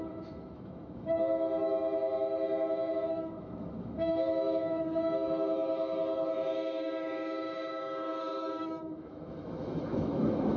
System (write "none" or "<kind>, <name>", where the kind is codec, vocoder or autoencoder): autoencoder, DAC-VAE